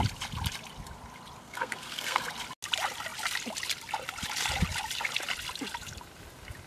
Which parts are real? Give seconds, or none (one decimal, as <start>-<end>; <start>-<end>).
0.0-1.4; 2.2-6.7